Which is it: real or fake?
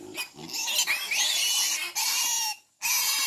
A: real